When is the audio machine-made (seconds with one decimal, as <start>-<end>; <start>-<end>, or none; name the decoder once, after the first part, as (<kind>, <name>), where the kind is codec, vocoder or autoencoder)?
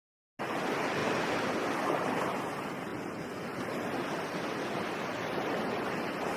1.0-1.5 (vocoder, BigVGAN v2)